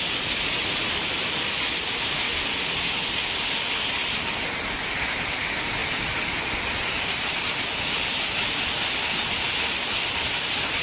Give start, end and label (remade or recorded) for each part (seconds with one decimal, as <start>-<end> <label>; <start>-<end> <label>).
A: 0.0-10.8 recorded